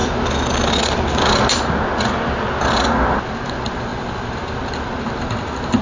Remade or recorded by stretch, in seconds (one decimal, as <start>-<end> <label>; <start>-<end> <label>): 0.0-5.8 recorded